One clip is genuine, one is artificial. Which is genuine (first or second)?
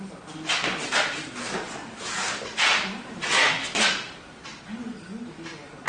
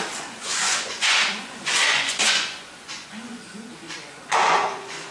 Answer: first